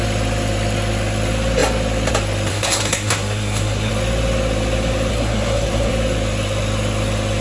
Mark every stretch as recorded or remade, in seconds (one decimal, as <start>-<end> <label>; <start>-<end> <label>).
0.0-2.5 recorded; 2.5-3.9 remade; 3.9-5.1 recorded; 5.1-5.9 remade; 5.9-7.4 recorded